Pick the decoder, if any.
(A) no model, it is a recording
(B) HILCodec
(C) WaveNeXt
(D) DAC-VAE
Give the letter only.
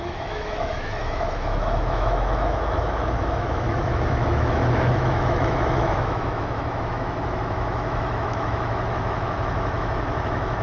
D